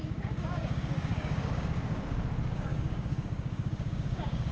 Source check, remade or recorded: remade